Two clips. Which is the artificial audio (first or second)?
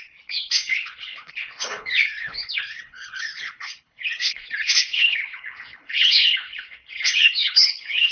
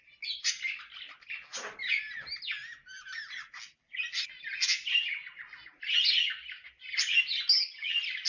first